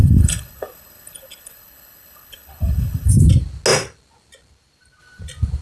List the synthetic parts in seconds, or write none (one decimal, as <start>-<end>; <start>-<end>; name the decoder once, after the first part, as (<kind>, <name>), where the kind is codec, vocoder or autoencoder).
0.0-3.1 (codec, HILCodec)